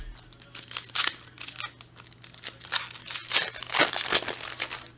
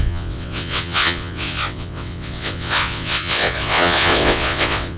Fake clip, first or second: second